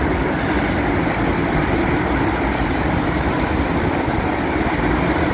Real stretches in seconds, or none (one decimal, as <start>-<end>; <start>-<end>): 0.0-5.3